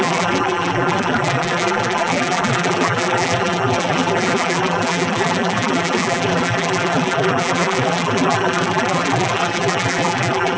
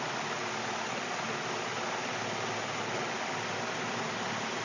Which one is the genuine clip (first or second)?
second